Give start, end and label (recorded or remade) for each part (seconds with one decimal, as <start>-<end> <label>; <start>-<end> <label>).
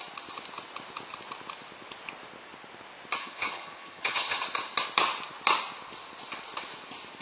0.0-3.2 recorded; 3.2-4.4 remade; 4.4-7.2 recorded